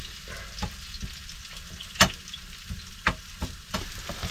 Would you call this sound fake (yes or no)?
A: no